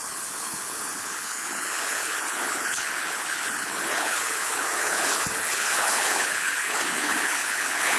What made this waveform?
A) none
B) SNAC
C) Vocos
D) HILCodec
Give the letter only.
D